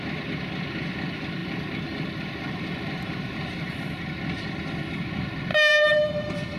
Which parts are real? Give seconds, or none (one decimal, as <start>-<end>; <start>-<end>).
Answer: 0.0-1.4; 4.0-5.5; 6.1-6.6